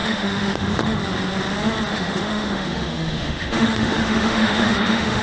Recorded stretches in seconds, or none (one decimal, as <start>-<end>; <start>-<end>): 1.0-1.9